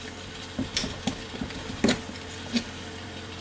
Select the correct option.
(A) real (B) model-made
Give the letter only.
B